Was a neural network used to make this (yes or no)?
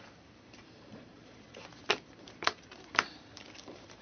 yes